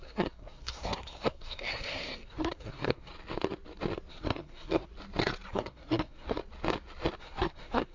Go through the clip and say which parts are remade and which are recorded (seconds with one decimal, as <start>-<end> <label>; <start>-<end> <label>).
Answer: 0.0-3.1 remade; 3.1-4.1 recorded; 4.1-4.9 remade; 4.9-5.5 recorded; 5.5-6.4 remade; 6.4-7.2 recorded; 7.2-7.9 remade